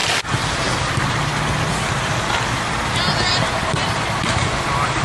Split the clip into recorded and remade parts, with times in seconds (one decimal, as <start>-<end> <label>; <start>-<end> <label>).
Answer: 0.0-0.8 recorded; 0.8-1.3 remade; 1.3-3.3 recorded; 3.3-5.0 remade